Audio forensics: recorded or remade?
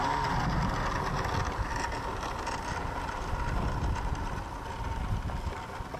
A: recorded